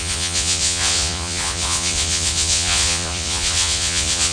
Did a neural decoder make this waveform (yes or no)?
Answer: yes